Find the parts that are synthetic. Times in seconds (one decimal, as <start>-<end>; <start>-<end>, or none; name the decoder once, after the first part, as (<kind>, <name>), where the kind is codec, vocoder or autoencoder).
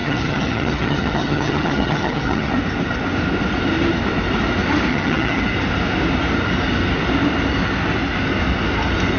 0.0-2.5 (vocoder, HiFi-GAN); 4.9-5.4